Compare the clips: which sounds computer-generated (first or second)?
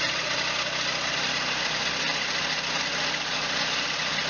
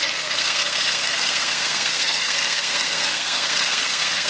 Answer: second